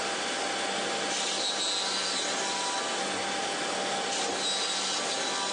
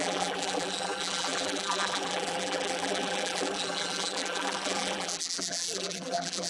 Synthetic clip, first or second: second